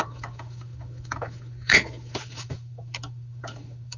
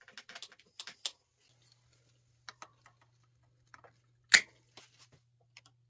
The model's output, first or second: first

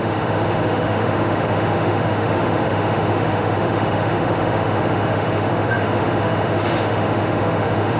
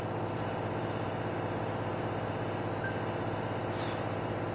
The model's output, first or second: first